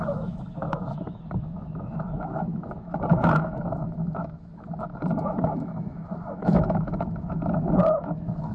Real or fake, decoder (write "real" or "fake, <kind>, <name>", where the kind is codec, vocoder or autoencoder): fake, autoencoder, DAC-VAE